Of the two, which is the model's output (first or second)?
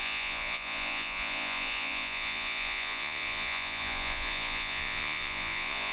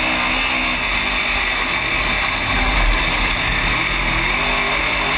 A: first